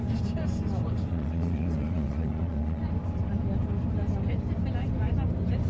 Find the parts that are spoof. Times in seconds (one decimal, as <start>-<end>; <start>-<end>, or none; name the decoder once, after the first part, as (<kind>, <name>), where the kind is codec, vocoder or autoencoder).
1.1-2.8 (vocoder, Vocos)